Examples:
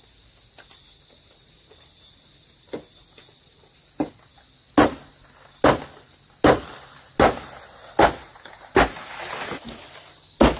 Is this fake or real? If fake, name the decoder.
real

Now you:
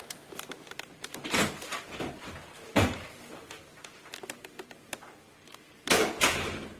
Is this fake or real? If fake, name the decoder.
real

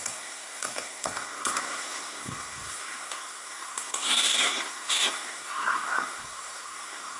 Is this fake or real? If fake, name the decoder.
fake, codec, SNAC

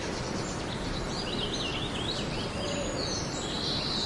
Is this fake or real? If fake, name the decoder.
real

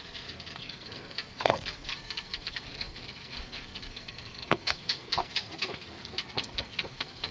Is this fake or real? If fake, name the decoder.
fake, codec, SNAC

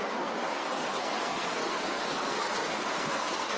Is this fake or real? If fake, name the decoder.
fake, codec, SNAC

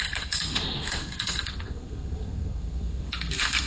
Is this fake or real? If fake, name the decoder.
fake, codec, SNAC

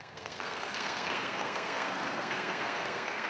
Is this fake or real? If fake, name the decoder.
fake, codec, SNAC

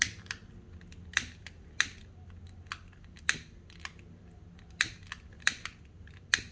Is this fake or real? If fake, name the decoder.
real